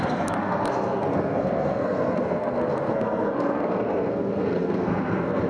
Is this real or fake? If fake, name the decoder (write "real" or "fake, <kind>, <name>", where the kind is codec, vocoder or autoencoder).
fake, codec, SNAC